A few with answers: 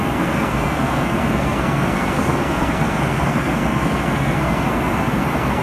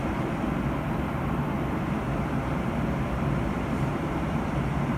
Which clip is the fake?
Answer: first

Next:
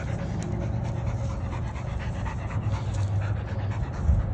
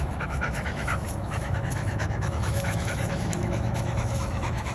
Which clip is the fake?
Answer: second